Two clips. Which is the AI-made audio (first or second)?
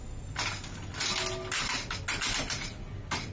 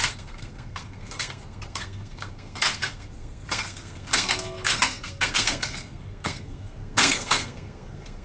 second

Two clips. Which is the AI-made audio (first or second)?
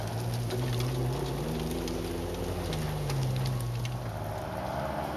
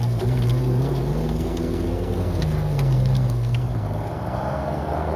second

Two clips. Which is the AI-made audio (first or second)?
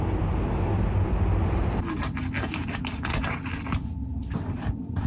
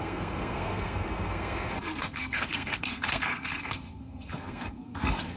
second